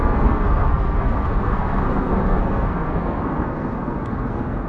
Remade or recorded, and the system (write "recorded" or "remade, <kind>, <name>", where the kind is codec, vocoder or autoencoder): remade, codec, SNAC